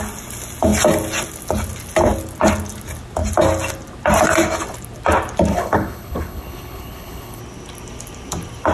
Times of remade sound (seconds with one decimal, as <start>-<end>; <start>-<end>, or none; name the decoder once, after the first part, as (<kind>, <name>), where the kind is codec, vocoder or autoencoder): 5.5-7.4 (codec, HILCodec)